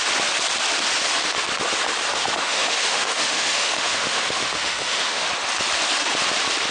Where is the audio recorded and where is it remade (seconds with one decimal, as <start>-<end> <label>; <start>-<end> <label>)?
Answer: 0.0-2.1 recorded; 2.1-5.3 remade; 5.3-6.7 recorded